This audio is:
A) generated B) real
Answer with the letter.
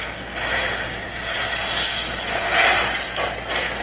B